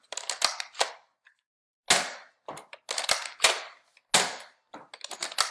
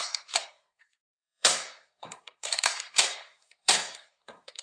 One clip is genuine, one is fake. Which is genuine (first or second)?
first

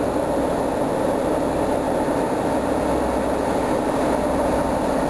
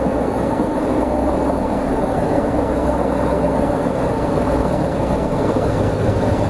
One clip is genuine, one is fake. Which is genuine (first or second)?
first